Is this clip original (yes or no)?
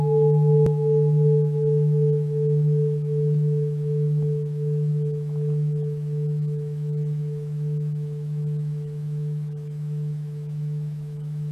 no